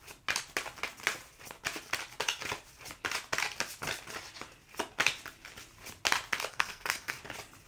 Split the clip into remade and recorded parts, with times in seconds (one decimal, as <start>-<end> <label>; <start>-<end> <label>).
0.0-6.5 recorded; 6.5-7.2 remade; 7.2-7.7 recorded